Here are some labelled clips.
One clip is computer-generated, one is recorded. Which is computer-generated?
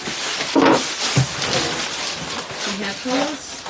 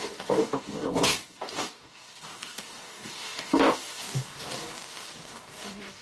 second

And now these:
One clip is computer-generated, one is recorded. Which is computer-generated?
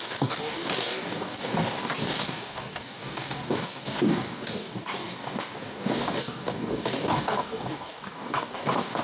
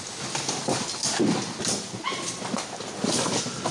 first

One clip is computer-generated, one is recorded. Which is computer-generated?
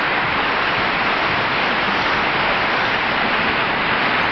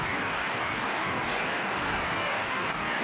second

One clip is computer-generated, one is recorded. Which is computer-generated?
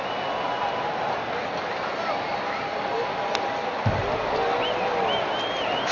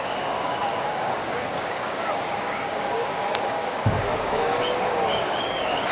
second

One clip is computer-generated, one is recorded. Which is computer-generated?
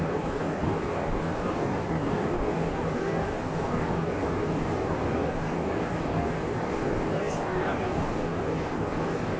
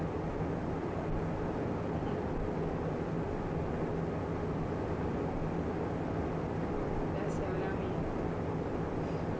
first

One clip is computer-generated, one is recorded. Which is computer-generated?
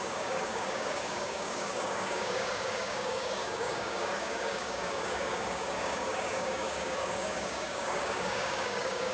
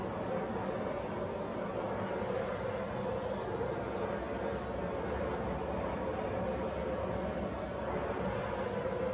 first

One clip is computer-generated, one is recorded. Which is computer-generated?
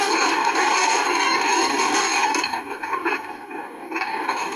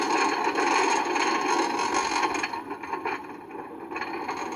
first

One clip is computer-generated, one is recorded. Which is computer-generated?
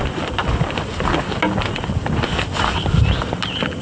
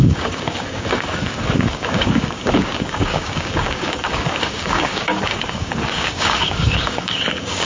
second